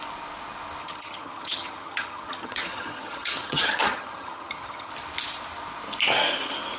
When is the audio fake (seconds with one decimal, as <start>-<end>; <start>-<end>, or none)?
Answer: 0.8-4.9